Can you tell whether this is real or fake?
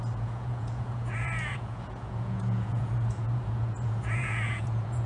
fake